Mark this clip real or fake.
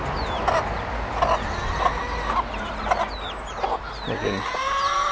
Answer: real